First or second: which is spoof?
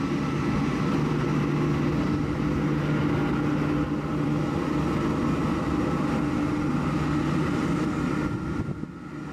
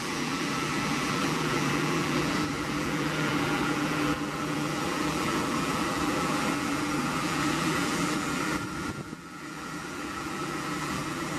second